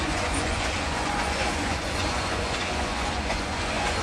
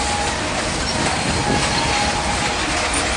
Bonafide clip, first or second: second